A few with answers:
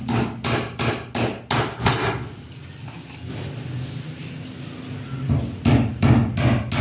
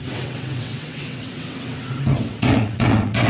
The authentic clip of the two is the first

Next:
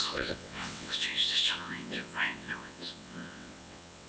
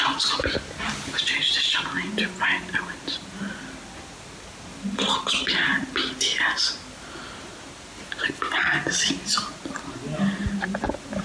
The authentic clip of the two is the second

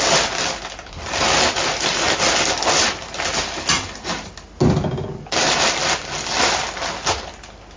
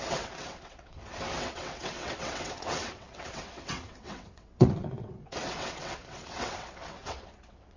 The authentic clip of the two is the first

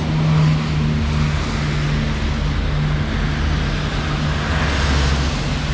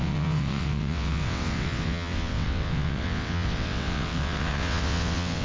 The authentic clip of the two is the first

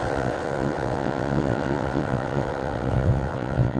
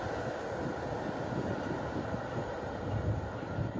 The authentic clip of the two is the second